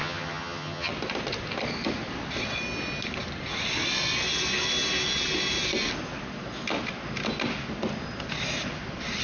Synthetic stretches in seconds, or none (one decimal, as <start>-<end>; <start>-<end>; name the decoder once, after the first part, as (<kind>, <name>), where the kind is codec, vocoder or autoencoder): 0.0-0.9 (vocoder, HiFi-GAN)